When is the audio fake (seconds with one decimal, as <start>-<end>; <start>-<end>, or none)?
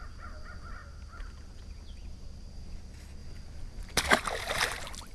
none